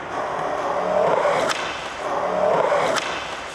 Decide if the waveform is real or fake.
real